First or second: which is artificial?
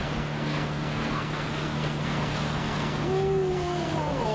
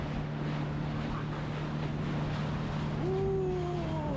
first